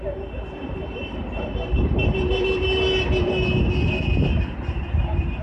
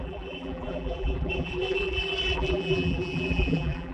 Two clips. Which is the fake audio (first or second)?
second